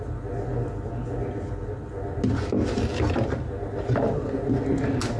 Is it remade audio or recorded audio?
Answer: recorded